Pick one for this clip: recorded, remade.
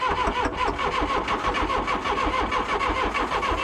recorded